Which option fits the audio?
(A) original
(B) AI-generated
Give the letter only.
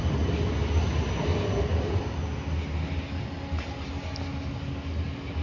A